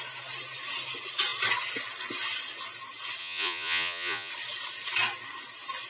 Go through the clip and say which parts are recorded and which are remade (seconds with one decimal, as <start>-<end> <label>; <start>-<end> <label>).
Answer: 0.0-3.2 recorded; 3.2-4.3 remade; 4.3-5.9 recorded